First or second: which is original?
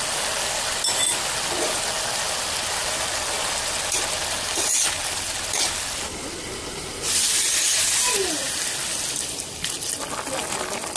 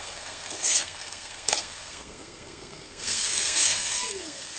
first